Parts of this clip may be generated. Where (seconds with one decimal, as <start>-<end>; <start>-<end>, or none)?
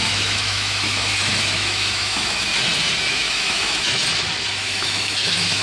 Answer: 0.0-2.5; 3.1-4.0; 4.6-5.6